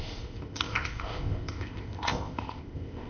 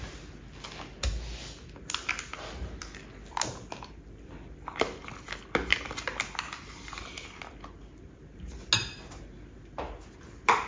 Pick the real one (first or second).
second